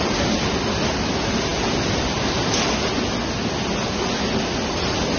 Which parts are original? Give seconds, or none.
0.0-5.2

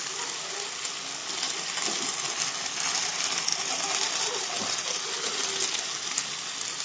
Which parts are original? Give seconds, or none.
0.0-6.8

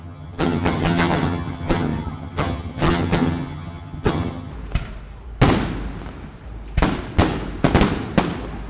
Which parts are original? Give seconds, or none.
4.5-8.7

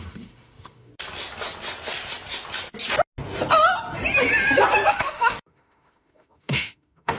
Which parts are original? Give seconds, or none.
0.9-4.9

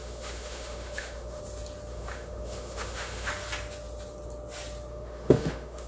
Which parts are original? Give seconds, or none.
1.4-1.9; 3.3-4.9